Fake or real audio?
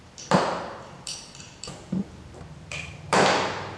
fake